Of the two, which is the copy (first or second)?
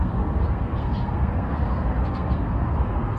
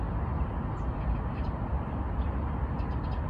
first